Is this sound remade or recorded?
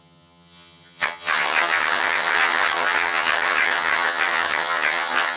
remade